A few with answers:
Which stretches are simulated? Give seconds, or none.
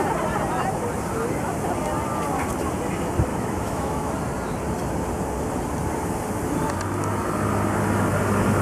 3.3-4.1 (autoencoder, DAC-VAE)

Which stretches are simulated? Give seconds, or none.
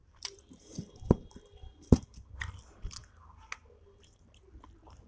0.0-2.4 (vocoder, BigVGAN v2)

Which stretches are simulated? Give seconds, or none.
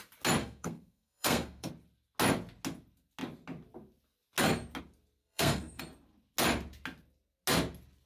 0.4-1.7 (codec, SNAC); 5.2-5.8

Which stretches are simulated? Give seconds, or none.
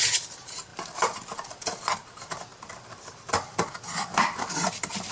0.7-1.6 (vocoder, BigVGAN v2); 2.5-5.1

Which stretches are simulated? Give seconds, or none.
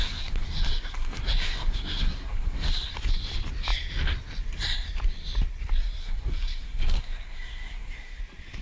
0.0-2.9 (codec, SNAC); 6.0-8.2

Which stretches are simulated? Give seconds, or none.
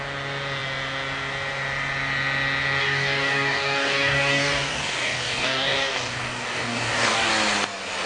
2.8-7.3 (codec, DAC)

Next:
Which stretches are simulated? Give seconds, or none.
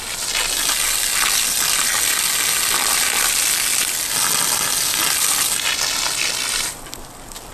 none